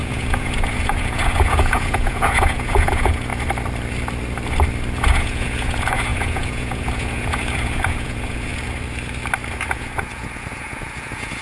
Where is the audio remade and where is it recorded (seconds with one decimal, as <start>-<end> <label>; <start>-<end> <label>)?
0.0-3.3 remade; 3.3-5.0 recorded; 5.0-8.5 remade; 8.5-9.5 recorded; 9.5-11.4 remade